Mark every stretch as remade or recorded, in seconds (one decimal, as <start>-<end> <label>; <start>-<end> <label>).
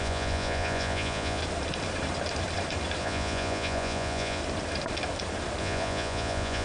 0.0-1.4 remade; 1.4-3.0 recorded; 3.0-4.4 remade; 4.4-5.6 recorded; 5.6-6.6 remade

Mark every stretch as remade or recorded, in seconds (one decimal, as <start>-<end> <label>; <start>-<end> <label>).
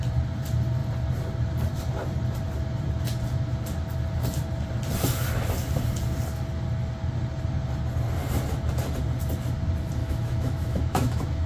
0.0-10.0 recorded; 10.0-11.5 remade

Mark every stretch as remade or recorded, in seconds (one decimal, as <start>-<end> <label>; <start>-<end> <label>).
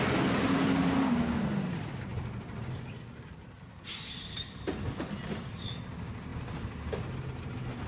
0.0-2.1 recorded; 2.1-5.6 remade; 5.6-7.9 recorded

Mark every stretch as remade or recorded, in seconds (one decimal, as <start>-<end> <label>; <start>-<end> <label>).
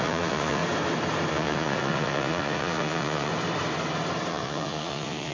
0.0-0.6 remade; 0.6-1.3 recorded; 1.3-3.3 remade; 3.3-4.3 recorded; 4.3-5.3 remade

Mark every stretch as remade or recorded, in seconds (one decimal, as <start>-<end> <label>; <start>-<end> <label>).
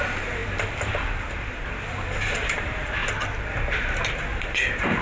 0.0-3.0 remade; 3.0-4.4 recorded; 4.4-5.0 remade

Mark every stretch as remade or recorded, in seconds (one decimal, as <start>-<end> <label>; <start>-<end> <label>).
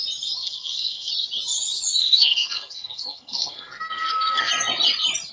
0.0-0.4 recorded; 0.4-1.1 remade; 1.1-2.0 recorded; 2.0-4.5 remade; 4.5-5.3 recorded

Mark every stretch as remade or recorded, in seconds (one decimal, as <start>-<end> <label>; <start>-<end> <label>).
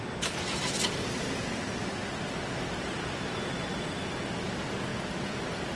0.0-5.8 recorded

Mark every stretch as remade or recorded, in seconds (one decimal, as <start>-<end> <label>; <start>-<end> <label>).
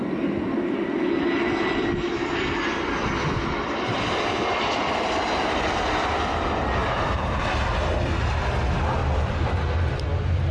0.0-1.8 recorded; 1.8-2.3 remade; 2.3-6.8 recorded; 6.8-7.6 remade; 7.6-9.0 recorded; 9.0-9.6 remade; 9.6-10.5 recorded